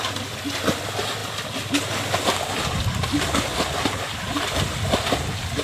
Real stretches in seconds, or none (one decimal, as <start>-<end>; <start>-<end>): 0.0-5.6